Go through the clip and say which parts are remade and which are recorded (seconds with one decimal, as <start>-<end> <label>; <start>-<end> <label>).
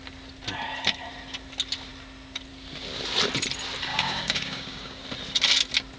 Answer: 0.0-3.9 recorded; 3.9-5.0 remade; 5.0-6.0 recorded